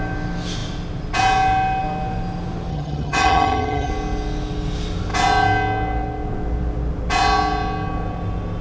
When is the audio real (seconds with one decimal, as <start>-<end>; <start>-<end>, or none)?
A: 0.0-2.7; 3.9-8.6